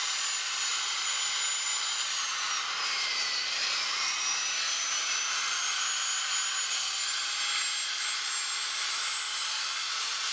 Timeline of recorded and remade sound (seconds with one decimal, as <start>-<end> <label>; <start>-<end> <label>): 0.0-6.2 remade; 6.2-8.8 recorded; 8.8-10.3 remade